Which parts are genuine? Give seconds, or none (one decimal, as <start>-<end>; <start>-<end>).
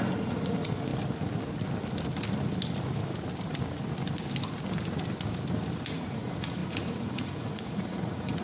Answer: 0.9-5.9